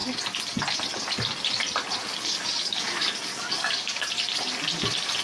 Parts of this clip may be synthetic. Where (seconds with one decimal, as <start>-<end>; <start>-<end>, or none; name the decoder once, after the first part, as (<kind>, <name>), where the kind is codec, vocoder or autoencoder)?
2.1-4.1 (codec, DAC)